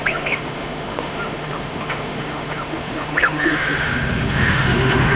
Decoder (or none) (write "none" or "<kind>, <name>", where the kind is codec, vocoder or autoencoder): autoencoder, DAC-VAE